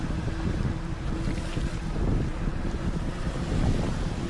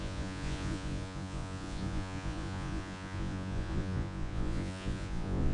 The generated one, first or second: second